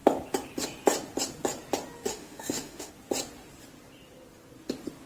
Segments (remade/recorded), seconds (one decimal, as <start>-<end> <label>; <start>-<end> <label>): 0.0-2.1 recorded; 2.1-2.9 remade; 2.9-5.1 recorded